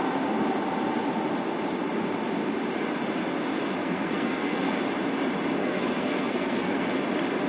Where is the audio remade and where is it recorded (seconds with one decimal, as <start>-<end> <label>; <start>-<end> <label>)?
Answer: 0.0-3.8 recorded; 3.8-4.8 remade; 4.8-5.6 recorded; 5.6-6.9 remade; 6.9-7.5 recorded